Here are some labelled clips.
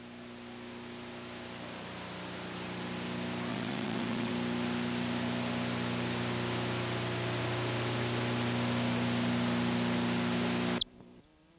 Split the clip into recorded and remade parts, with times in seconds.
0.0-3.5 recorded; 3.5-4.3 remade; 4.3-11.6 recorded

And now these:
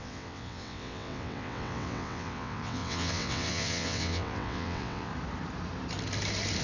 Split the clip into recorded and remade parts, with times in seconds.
0.0-5.1 remade; 5.1-6.6 recorded

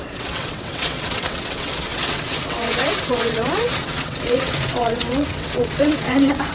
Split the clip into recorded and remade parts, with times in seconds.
0.0-6.5 remade

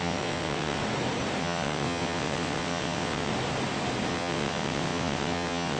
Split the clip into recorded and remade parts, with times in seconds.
0.0-0.8 remade; 0.8-1.4 recorded; 1.4-3.3 remade; 3.3-4.1 recorded; 4.1-5.8 remade

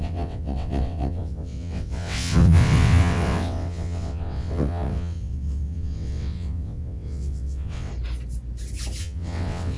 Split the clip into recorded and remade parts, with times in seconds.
0.0-7.9 remade; 7.9-9.0 recorded; 9.0-9.8 remade

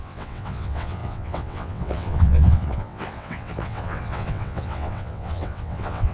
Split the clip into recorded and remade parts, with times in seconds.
0.0-6.1 remade